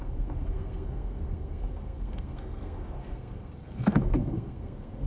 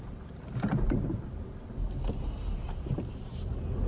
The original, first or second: second